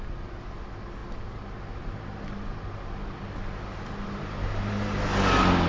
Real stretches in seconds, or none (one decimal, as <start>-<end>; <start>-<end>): 0.0-5.7